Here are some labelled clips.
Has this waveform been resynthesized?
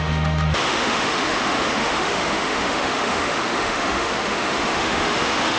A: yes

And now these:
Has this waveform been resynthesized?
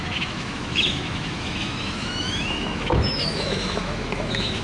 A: yes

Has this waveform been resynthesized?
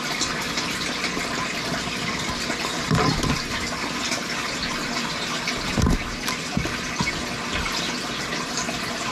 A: no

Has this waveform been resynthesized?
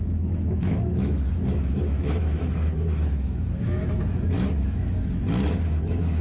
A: yes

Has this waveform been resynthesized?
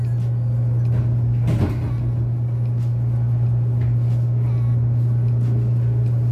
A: no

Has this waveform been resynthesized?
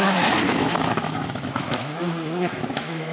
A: yes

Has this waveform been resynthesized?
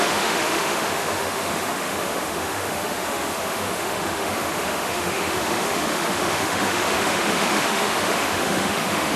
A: yes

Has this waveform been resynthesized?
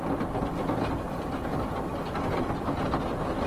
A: no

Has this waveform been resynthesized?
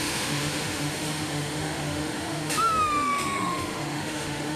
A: yes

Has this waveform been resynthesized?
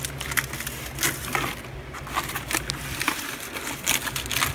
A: no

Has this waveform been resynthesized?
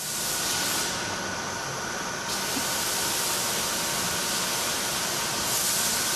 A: no